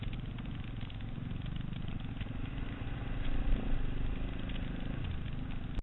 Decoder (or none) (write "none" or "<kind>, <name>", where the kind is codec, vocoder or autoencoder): none